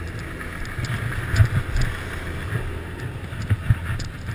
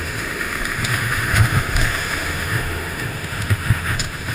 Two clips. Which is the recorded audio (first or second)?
first